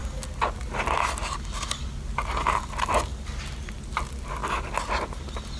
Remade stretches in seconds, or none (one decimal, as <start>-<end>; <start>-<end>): none